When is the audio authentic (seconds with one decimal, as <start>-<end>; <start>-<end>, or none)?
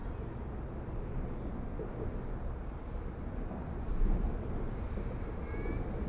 0.0-2.6; 4.3-6.1